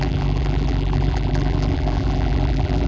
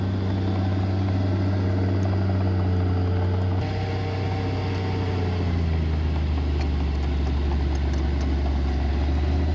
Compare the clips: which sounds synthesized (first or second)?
first